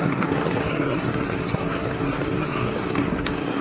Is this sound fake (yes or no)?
yes